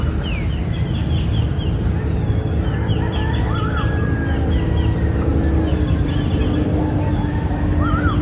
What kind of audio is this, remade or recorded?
recorded